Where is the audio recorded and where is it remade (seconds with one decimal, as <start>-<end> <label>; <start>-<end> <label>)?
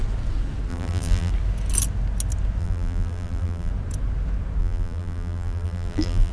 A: 0.0-0.7 recorded; 0.7-1.3 remade; 1.3-2.6 recorded; 2.6-3.7 remade; 3.7-4.6 recorded; 4.6-6.3 remade